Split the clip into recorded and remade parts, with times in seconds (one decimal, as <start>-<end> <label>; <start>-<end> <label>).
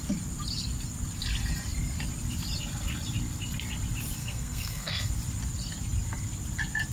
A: 0.0-4.2 recorded; 4.2-5.1 remade; 5.1-6.9 recorded